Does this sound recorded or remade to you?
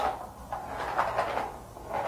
recorded